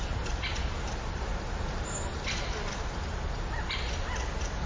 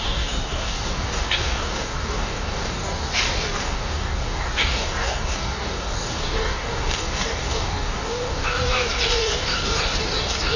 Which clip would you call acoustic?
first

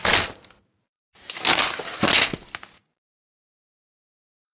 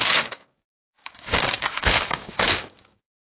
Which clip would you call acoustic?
first